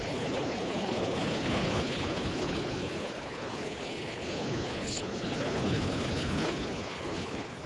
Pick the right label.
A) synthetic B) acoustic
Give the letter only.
A